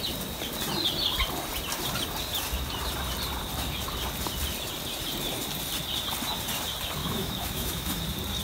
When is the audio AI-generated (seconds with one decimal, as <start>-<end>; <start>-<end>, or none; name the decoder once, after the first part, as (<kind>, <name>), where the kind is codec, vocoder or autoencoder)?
7.0-8.0 (autoencoder, DAC-VAE)